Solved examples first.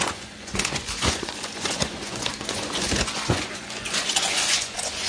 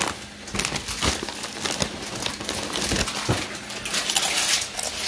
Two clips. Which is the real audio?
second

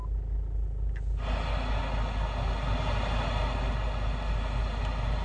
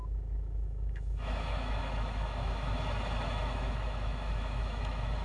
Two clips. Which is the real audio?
first